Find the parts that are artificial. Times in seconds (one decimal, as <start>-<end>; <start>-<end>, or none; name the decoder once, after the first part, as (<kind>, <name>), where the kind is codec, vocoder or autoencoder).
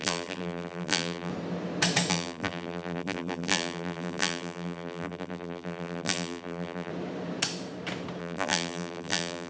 0.0-1.3 (vocoder, BigVGAN v2); 2.1-6.9; 8.2-9.5